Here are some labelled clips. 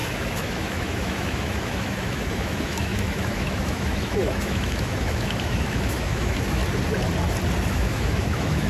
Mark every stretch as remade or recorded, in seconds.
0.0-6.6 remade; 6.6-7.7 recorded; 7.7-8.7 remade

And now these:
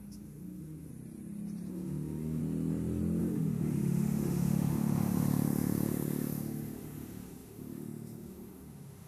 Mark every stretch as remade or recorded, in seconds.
0.0-0.9 remade; 0.9-1.7 recorded; 1.7-2.4 remade; 2.4-3.2 recorded; 3.2-9.1 remade

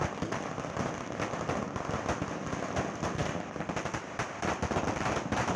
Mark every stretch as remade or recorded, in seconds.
0.0-5.6 recorded

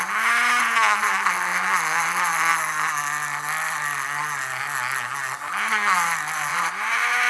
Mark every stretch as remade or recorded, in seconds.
0.0-6.5 recorded; 6.5-7.3 remade

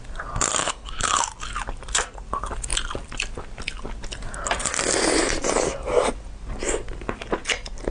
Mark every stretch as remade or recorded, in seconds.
0.0-0.6 recorded; 0.6-1.2 remade; 1.2-7.9 recorded